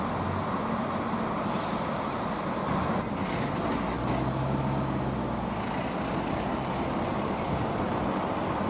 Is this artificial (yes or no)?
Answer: no